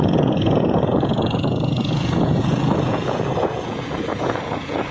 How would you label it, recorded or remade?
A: remade